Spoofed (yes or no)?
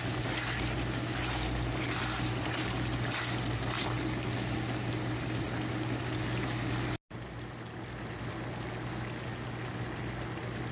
no